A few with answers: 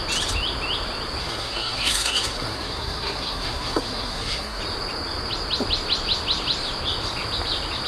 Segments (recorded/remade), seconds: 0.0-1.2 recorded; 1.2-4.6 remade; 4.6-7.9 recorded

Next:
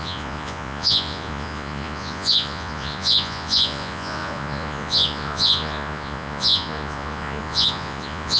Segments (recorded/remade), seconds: 0.0-8.4 remade

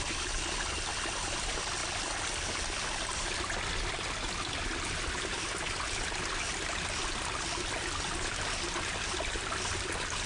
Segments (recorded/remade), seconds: 0.0-10.3 recorded

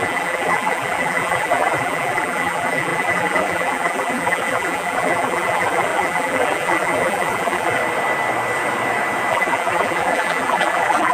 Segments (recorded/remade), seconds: 0.0-7.8 remade; 7.8-9.3 recorded; 9.3-11.1 remade

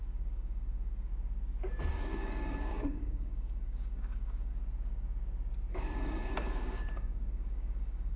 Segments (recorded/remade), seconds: 0.0-1.1 remade; 1.1-1.9 recorded; 1.9-4.5 remade; 4.5-5.7 recorded; 5.7-8.2 remade

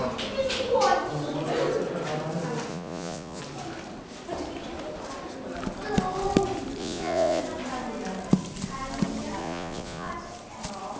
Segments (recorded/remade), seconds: 0.0-2.7 recorded; 2.7-3.4 remade; 3.4-6.8 recorded; 6.8-7.4 remade; 7.4-9.4 recorded; 9.4-10.1 remade; 10.1-11.0 recorded